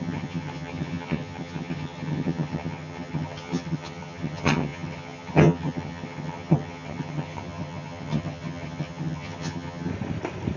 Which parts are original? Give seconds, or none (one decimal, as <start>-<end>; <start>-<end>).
9.9-10.6